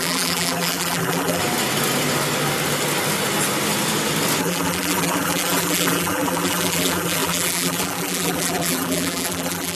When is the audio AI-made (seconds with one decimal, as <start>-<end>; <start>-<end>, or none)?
0.0-1.4; 4.4-9.8